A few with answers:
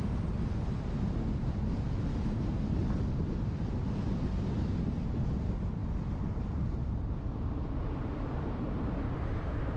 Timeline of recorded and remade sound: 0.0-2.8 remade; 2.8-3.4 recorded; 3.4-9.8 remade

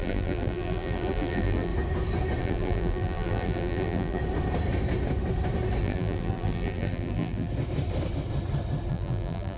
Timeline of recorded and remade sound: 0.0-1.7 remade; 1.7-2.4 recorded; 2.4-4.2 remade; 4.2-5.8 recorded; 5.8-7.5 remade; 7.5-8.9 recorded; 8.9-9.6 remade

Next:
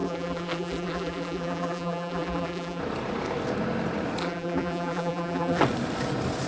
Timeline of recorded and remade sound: 0.0-2.8 remade; 2.8-4.2 recorded; 4.2-5.6 remade; 5.6-6.5 recorded

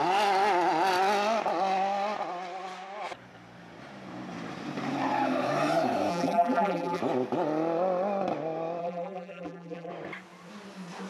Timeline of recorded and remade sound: 0.0-6.1 recorded; 6.1-7.0 remade; 7.0-8.8 recorded; 8.8-9.9 remade; 9.9-11.1 recorded